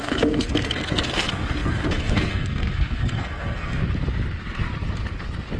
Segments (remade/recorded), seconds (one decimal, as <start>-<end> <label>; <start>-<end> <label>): 0.0-3.8 remade; 3.8-5.6 recorded

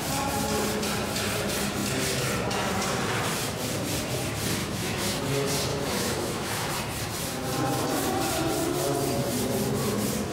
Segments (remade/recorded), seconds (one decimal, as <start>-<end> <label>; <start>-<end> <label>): 0.0-4.6 recorded; 4.6-5.2 remade; 5.2-5.7 recorded; 5.7-6.7 remade; 6.7-10.3 recorded

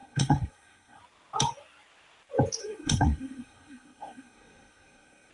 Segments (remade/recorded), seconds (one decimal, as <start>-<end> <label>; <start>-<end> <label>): 0.0-1.0 remade; 1.0-2.6 recorded; 2.6-5.3 remade

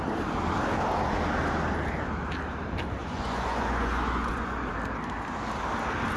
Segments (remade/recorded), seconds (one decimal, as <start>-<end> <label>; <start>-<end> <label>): 0.0-3.0 recorded; 3.0-4.7 remade; 4.7-6.2 recorded

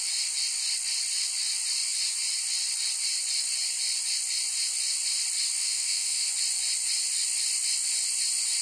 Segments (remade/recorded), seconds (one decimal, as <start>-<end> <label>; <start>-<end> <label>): 0.0-5.6 recorded; 5.6-6.3 remade; 6.3-8.6 recorded

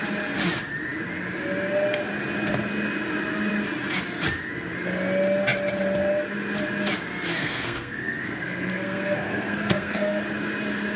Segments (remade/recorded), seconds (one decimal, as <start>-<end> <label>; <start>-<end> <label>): 0.0-7.4 recorded; 7.4-10.2 remade; 10.2-11.0 recorded